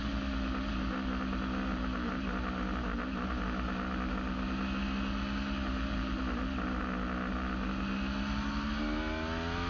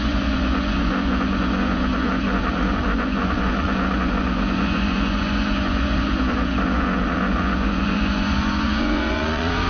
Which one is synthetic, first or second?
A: second